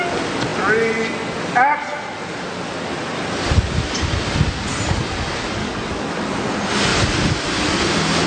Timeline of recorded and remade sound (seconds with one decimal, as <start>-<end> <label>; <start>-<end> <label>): 0.0-5.6 recorded; 5.6-6.1 remade; 6.1-8.3 recorded